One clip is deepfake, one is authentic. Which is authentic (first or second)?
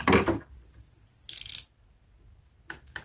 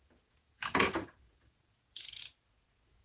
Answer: first